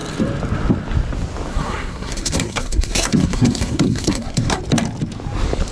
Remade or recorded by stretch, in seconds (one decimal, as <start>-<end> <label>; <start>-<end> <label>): 0.0-1.5 recorded; 1.5-4.6 remade; 4.6-5.7 recorded

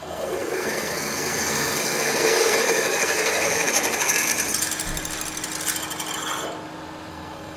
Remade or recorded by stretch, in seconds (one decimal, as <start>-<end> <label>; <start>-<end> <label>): 0.0-4.3 remade; 4.3-7.1 recorded; 7.1-7.6 remade

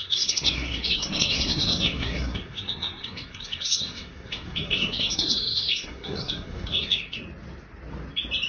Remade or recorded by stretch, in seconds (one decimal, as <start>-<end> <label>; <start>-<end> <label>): 0.0-7.2 remade; 7.2-8.5 recorded

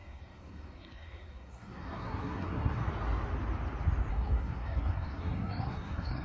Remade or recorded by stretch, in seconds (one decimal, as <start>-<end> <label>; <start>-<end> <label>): 0.0-2.8 remade; 2.8-4.1 recorded; 4.1-6.2 remade

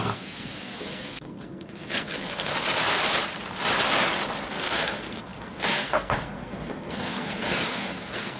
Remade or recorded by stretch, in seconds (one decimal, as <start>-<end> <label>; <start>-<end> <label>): 0.0-2.5 remade; 2.5-4.5 recorded; 4.5-8.4 remade

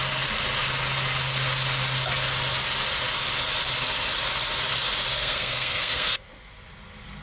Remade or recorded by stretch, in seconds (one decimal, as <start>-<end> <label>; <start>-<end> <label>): 0.0-5.1 recorded; 5.1-6.2 remade; 6.2-7.2 recorded